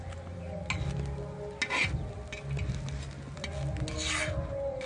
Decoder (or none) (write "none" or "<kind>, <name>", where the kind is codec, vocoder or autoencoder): none